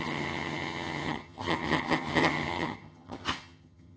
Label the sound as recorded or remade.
remade